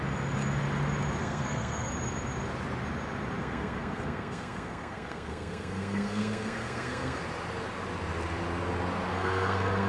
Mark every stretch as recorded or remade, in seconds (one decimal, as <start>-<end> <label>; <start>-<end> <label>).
0.0-1.2 recorded; 1.2-1.9 remade; 1.9-3.4 recorded; 3.4-7.2 remade; 7.2-9.1 recorded; 9.1-9.9 remade

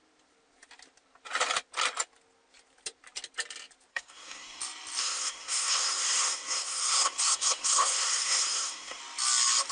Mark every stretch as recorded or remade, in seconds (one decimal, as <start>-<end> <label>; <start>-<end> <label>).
0.0-3.9 recorded; 3.9-4.6 remade; 4.6-5.0 recorded; 5.0-9.0 remade; 9.0-9.7 recorded